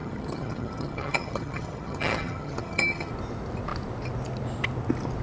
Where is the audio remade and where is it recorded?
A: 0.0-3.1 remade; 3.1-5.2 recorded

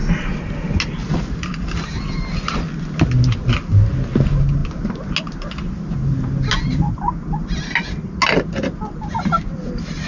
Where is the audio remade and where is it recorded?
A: 0.0-10.1 recorded

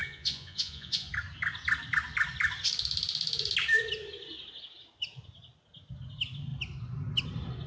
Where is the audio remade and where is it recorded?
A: 0.0-1.1 remade; 1.1-7.7 recorded